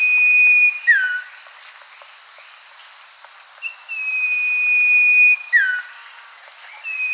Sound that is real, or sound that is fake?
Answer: real